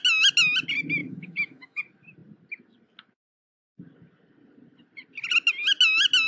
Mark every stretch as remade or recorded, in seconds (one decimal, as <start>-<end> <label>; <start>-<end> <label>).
0.0-1.0 recorded; 1.0-1.8 remade; 1.8-6.3 recorded